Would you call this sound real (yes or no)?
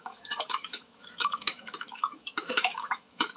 no